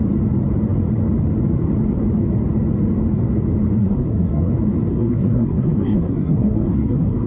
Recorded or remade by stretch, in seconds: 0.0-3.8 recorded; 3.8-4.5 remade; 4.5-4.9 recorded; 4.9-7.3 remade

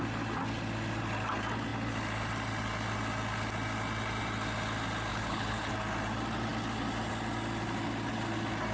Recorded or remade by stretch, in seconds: 0.0-5.1 recorded; 5.1-5.7 remade; 5.7-8.7 recorded

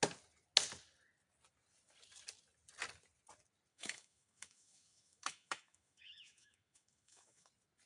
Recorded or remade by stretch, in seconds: 0.0-3.7 recorded; 3.7-7.5 remade; 7.5-7.9 recorded

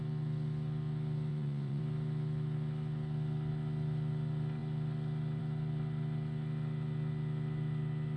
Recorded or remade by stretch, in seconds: 0.0-1.3 recorded; 1.3-1.8 remade; 1.8-8.2 recorded

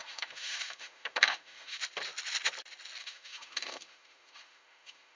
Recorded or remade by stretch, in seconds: 0.0-1.8 remade; 1.8-3.0 recorded; 3.0-5.2 remade

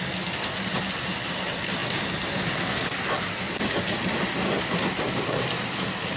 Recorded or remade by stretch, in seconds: 0.0-6.2 recorded

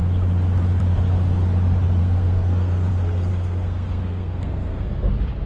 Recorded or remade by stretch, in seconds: 0.0-2.0 recorded; 2.0-2.9 remade; 2.9-3.3 recorded; 3.3-5.1 remade; 5.1-5.5 recorded

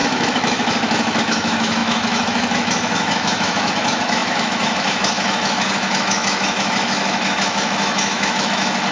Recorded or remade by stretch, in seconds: 0.0-8.9 remade